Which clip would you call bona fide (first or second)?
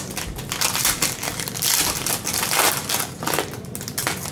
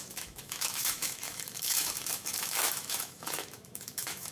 first